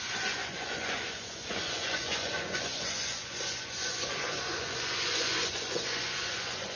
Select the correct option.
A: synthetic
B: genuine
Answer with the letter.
A